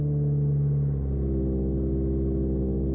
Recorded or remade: recorded